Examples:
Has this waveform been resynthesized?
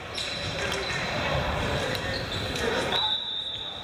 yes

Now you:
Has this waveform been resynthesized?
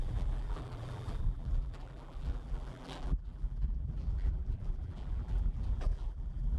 yes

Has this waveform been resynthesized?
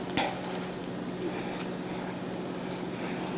no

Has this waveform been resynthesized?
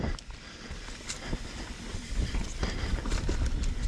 yes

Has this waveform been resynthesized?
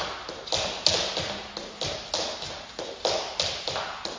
no